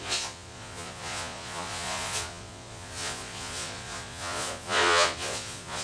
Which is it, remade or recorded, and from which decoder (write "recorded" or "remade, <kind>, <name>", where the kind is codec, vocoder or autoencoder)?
remade, vocoder, Vocos